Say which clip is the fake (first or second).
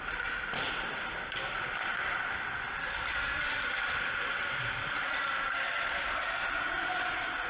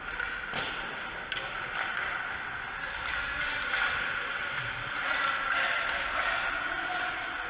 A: first